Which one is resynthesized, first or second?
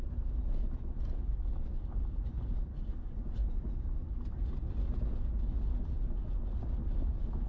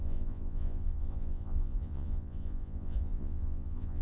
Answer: second